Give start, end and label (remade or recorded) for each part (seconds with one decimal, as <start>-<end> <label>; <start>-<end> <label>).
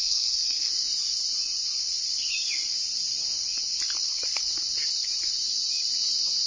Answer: 0.0-0.7 remade; 0.7-6.5 recorded